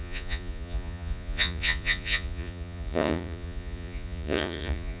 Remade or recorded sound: remade